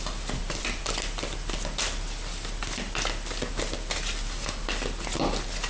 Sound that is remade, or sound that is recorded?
recorded